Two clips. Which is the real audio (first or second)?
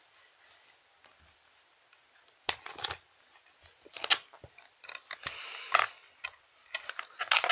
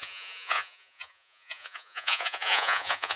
first